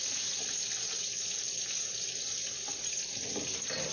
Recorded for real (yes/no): yes